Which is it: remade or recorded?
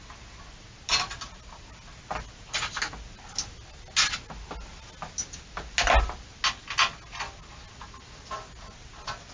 recorded